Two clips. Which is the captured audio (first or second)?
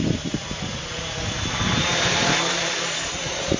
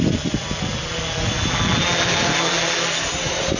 second